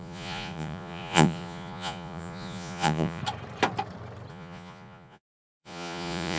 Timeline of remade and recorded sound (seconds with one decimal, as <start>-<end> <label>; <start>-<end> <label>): 0.0-3.2 remade; 3.2-4.3 recorded; 4.3-6.4 remade